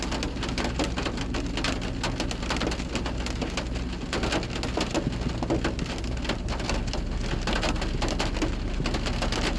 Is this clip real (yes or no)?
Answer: yes